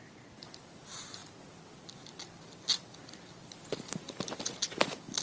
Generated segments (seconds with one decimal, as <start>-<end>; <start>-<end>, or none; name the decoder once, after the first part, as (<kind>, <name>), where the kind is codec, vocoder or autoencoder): none